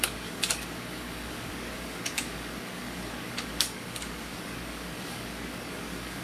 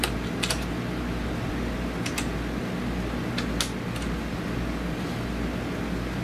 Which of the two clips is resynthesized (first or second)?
first